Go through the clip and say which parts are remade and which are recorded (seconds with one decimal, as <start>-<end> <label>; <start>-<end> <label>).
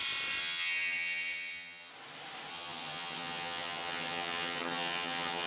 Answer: 0.0-0.4 recorded; 0.4-1.9 remade; 1.9-2.5 recorded; 2.5-5.5 remade